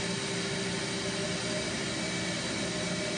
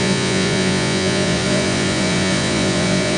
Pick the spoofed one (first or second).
second